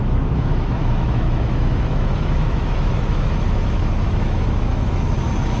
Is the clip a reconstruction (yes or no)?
yes